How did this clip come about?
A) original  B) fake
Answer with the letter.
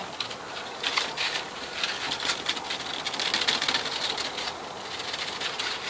A